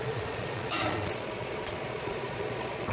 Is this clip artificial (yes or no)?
yes